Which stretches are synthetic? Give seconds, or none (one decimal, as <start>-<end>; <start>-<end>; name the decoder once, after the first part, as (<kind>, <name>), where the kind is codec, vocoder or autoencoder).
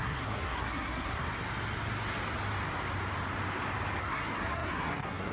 0.0-1.2 (codec, SNAC); 4.0-5.3